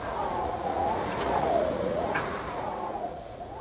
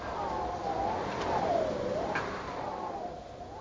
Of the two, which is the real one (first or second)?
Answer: second